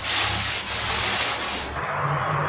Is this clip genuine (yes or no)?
yes